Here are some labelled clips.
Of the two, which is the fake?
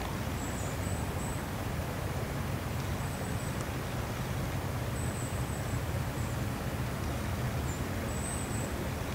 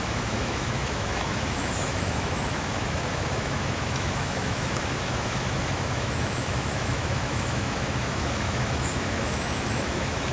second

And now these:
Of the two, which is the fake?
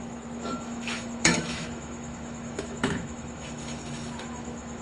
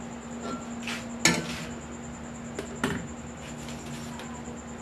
first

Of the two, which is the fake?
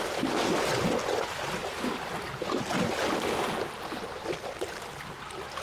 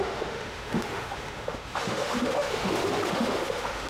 second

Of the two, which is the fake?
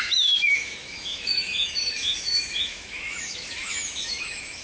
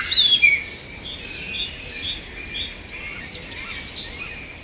first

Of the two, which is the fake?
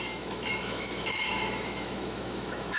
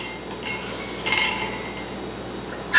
first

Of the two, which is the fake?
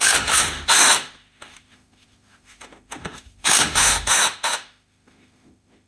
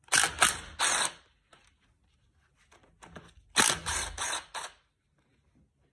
first